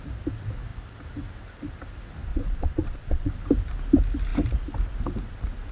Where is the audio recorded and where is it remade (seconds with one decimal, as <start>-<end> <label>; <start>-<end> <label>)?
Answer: 0.0-2.3 recorded; 2.3-3.3 remade; 3.3-5.7 recorded